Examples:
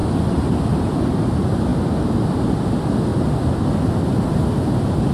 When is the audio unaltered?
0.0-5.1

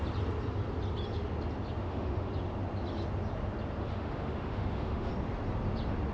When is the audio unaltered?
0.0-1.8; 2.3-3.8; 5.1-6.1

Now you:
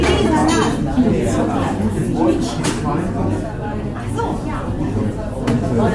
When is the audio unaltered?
0.0-5.9